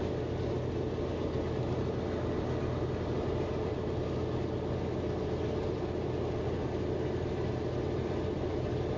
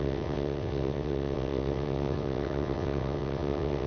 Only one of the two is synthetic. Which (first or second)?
second